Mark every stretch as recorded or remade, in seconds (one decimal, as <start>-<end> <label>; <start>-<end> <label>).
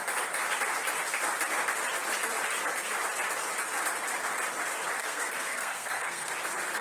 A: 0.0-5.0 recorded; 5.0-6.3 remade; 6.3-6.8 recorded